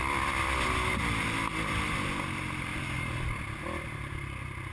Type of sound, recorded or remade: recorded